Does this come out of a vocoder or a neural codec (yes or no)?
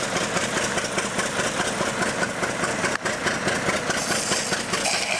no